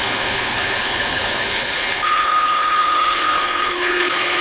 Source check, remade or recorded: remade